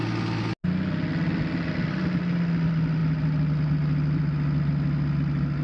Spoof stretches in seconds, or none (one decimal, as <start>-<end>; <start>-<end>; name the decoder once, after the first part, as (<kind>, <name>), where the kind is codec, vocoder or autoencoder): none